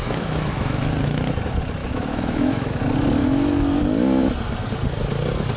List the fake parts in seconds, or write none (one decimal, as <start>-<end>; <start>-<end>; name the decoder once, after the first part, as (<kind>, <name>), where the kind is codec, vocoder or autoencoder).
0.0-0.9 (autoencoder, DAC-VAE); 1.8-2.8; 3.2-3.8

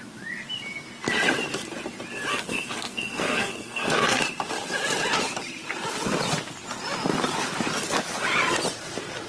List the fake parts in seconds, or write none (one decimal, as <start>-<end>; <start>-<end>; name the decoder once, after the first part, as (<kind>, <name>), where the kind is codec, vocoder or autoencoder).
2.3-4.2 (codec, SNAC)

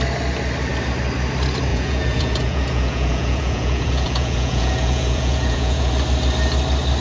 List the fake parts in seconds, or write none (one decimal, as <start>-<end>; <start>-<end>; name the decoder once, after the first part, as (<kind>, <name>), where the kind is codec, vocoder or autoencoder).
1.7-5.9 (vocoder, Vocos)

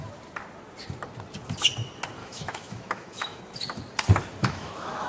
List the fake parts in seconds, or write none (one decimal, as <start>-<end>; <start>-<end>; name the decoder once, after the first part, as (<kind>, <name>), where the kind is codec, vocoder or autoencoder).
2.2-3.4 (autoencoder, DAC-VAE); 4.4-5.1

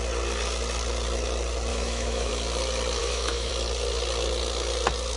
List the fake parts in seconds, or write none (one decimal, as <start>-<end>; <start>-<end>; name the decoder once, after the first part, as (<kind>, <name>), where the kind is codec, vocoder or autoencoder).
1.7-2.3 (autoencoder, DAC-VAE); 3.0-3.5

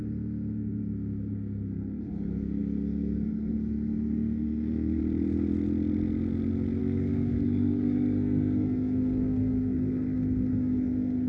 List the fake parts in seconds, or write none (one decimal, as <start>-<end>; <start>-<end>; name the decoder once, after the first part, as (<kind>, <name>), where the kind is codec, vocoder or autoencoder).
0.0-5.0 (codec, SNAC); 6.8-11.3

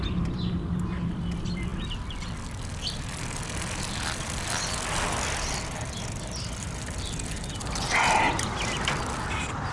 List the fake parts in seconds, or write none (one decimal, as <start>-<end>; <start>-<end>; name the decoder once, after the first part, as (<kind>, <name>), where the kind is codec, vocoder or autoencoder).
none

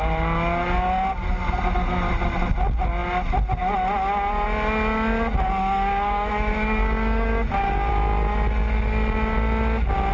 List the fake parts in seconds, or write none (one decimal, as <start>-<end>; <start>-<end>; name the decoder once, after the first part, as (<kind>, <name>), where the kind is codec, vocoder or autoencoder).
5.6-7.9 (codec, DAC)